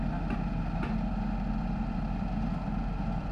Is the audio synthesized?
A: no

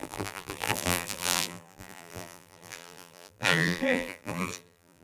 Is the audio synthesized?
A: yes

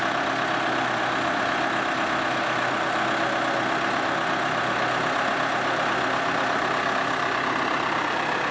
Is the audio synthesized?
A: no